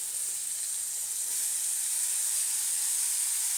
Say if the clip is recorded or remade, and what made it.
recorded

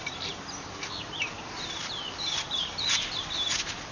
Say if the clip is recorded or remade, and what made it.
recorded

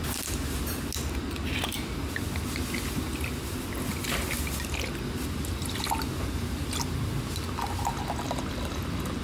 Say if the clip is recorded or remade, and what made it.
recorded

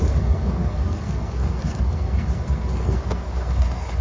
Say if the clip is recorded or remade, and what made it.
remade, codec, SNAC